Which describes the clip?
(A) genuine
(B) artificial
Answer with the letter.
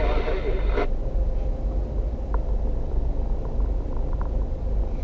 A